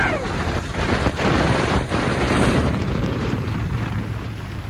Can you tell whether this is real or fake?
fake